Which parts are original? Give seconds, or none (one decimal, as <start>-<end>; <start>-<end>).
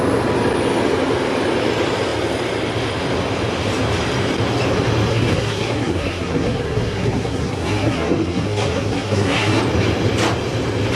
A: 0.0-5.1; 9.6-11.0